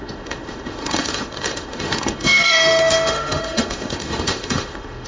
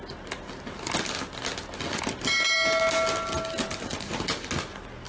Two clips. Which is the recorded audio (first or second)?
second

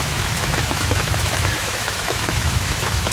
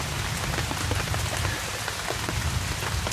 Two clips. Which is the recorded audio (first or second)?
second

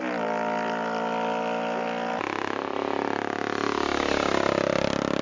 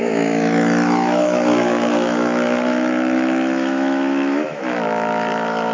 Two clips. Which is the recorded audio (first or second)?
first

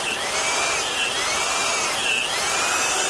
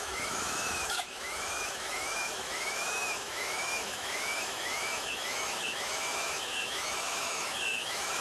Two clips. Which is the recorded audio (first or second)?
first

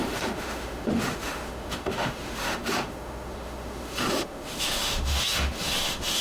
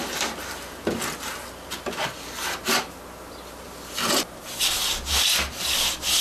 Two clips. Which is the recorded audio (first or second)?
second